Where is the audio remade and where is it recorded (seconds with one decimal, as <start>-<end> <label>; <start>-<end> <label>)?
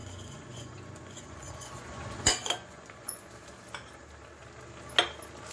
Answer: 0.0-3.3 remade; 3.3-5.5 recorded